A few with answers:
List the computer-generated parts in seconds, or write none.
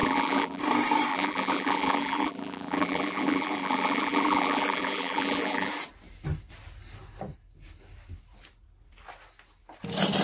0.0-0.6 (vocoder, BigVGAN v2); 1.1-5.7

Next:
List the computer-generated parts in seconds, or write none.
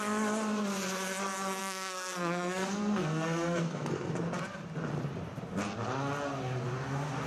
1.6-4.1 (codec, SNAC)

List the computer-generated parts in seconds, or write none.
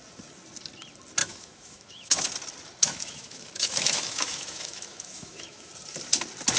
1.2-2.3 (autoencoder, DAC-VAE); 2.8-5.7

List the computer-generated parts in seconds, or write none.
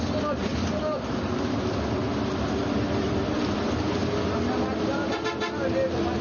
2.6-3.2 (vocoder, BigVGAN v2)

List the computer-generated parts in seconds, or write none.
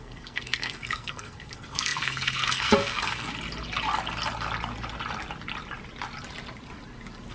0.0-3.3 (codec, SNAC)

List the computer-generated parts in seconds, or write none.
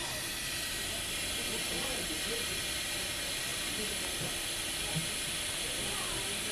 none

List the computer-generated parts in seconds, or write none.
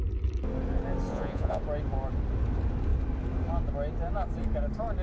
1.1-1.6 (vocoder, Vocos)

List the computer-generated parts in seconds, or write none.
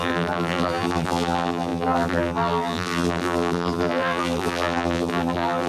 0.0-5.7 (vocoder, BigVGAN v2)